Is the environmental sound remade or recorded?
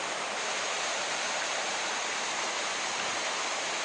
remade